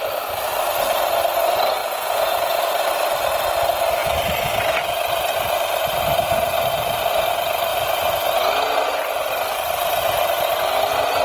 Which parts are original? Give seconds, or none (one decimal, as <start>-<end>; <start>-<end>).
0.0-1.8; 2.6-11.2